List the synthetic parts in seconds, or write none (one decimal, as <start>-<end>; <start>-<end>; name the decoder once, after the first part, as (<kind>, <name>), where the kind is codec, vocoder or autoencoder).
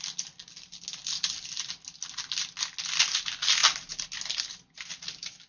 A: none